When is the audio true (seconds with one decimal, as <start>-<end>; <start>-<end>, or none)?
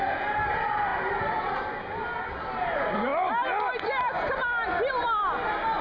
0.0-5.8